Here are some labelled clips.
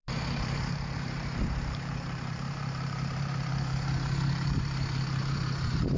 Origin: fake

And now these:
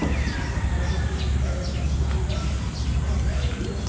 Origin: real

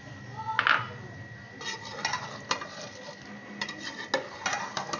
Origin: real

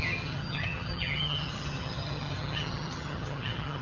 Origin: fake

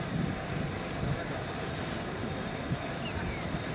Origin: fake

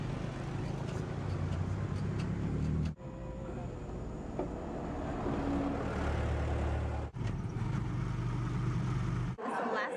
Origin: real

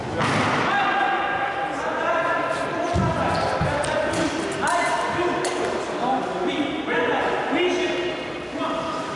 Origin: real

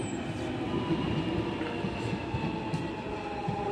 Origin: real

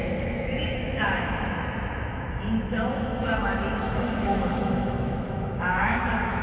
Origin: fake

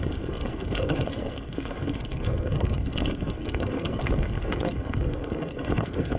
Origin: fake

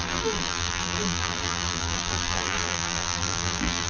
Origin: fake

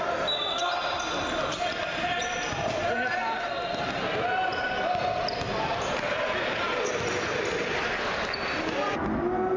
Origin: real